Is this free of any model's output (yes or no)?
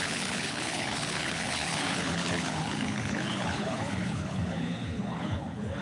no